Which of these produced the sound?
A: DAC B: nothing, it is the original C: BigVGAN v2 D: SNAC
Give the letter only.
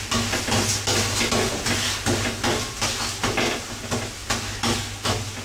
B